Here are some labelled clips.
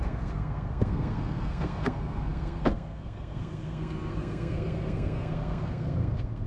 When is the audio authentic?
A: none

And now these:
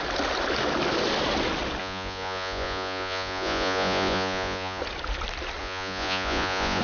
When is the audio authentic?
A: 0.0-1.8; 4.8-5.6